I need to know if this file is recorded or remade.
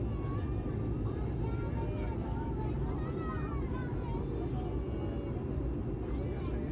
recorded